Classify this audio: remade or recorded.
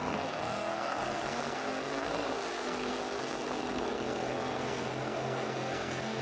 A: remade